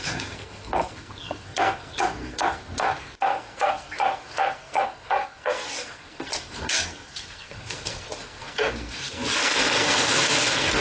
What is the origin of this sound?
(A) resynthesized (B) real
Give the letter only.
A